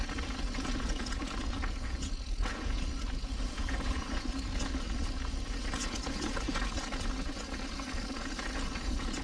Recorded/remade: remade